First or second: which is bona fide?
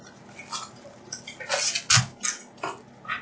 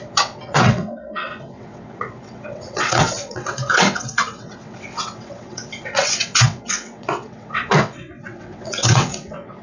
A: first